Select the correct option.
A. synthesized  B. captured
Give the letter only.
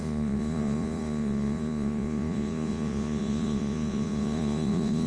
A